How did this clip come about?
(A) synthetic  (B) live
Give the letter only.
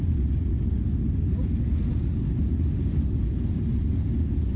B